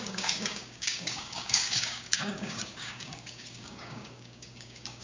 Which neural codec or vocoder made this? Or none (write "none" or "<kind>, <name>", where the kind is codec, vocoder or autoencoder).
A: codec, DAC